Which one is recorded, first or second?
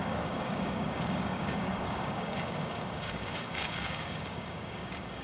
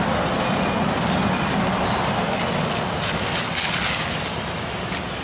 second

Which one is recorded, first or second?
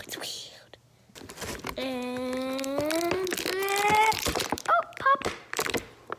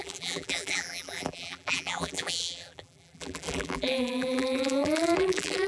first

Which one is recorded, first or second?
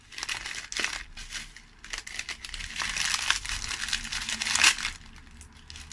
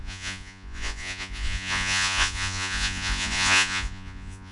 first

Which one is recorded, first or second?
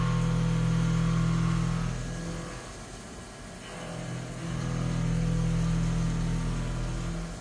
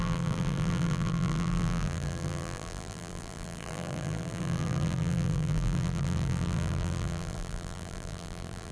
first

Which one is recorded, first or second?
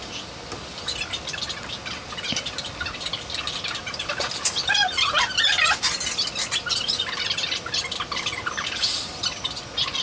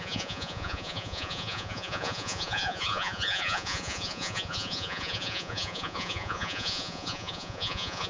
first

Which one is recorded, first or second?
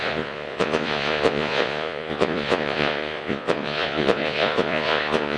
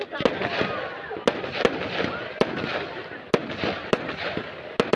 second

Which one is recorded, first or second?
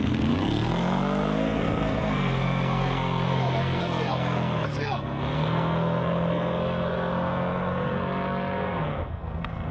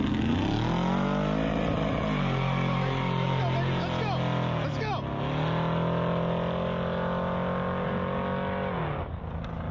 second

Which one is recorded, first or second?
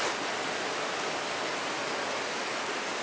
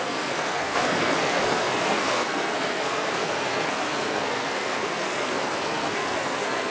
first